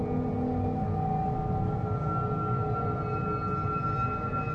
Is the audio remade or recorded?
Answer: recorded